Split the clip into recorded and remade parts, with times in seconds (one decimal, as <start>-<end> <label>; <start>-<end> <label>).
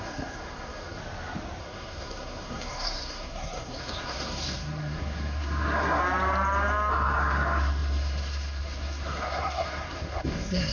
0.0-1.0 remade; 1.0-1.6 recorded; 1.6-6.0 remade; 6.0-6.9 recorded; 6.9-10.7 remade